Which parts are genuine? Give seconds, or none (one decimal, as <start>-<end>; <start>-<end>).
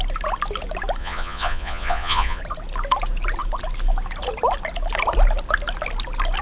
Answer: 0.0-1.0; 2.4-6.4